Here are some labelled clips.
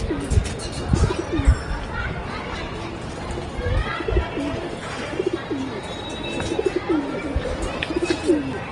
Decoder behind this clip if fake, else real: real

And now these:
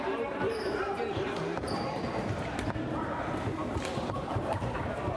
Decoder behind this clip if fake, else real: fake, vocoder, BigVGAN v2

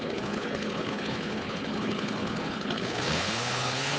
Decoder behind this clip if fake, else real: fake, codec, HILCodec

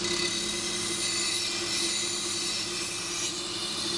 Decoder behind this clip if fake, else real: real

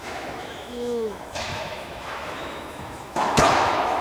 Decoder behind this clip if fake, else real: fake, autoencoder, DAC-VAE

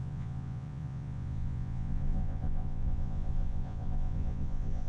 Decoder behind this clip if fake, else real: fake, vocoder, Vocos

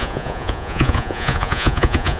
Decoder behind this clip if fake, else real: fake, vocoder, Vocos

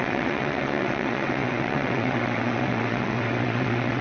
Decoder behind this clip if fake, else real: fake, vocoder, WaveNeXt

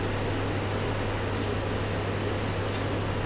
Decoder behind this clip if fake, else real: real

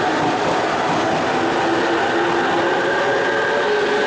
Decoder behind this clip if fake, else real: real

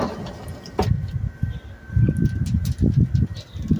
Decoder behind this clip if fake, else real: real